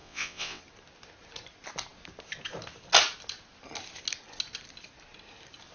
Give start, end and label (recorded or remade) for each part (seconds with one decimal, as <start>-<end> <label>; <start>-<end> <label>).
0.0-0.6 remade; 0.6-5.7 recorded